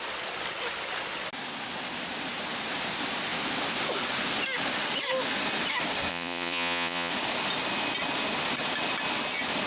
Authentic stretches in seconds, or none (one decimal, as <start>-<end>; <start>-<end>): 0.0-6.1; 7.1-9.7